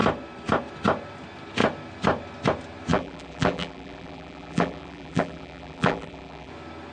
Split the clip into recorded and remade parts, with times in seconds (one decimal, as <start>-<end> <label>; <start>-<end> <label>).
0.0-2.9 recorded; 2.9-6.5 remade; 6.5-6.9 recorded